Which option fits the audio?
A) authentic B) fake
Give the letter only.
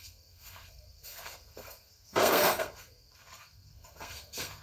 B